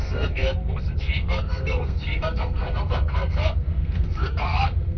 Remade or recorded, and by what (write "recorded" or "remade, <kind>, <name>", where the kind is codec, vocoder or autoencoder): remade, codec, SNAC